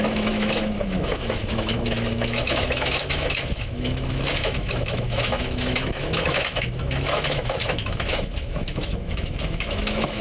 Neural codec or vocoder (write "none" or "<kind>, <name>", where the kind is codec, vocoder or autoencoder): autoencoder, DAC-VAE